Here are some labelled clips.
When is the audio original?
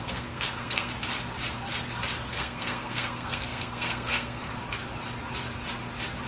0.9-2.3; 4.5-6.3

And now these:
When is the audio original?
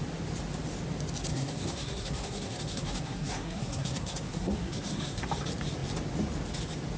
0.0-1.3; 5.2-7.0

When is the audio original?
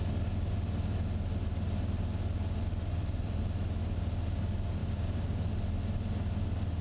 0.0-4.8; 5.5-6.8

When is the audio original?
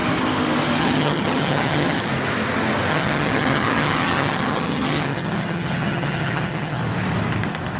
0.0-0.8; 2.1-2.9; 6.8-7.8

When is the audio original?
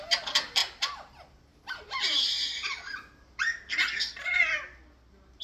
0.0-5.4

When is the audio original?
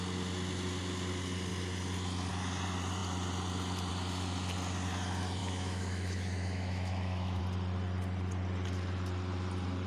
0.0-5.4; 7.4-9.9